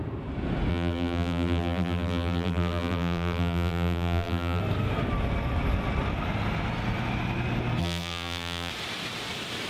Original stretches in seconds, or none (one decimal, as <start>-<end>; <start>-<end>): 0.0-0.7; 4.6-7.8; 8.7-9.7